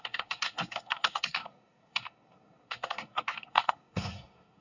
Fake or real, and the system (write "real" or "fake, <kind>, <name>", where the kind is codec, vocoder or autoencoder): fake, codec, SNAC